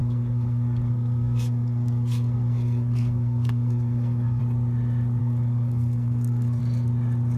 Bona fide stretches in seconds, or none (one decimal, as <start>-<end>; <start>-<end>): 4.4-5.2; 6.6-7.4